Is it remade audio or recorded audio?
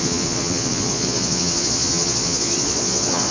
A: remade